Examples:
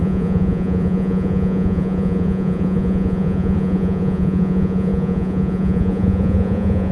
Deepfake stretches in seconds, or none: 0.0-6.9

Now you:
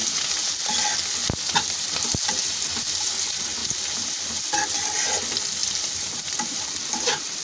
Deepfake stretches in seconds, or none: 0.0-0.5; 3.6-4.4; 5.6-7.4

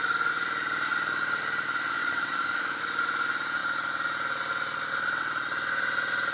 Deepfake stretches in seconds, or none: 2.0-2.8